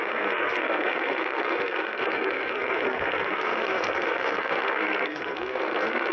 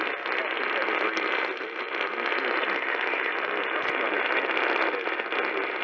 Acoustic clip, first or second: second